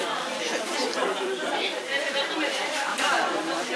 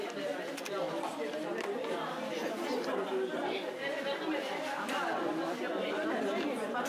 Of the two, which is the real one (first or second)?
second